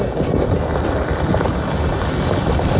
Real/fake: real